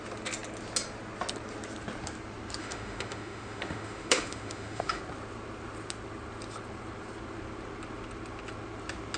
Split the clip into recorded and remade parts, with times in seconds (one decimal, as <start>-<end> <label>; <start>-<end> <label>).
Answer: 0.0-2.6 recorded; 2.6-5.0 remade; 5.0-9.2 recorded